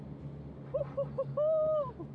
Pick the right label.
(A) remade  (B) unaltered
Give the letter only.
B